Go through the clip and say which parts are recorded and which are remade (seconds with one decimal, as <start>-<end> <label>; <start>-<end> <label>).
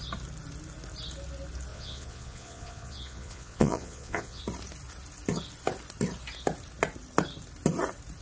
0.0-1.7 recorded; 1.7-4.4 remade; 4.4-8.2 recorded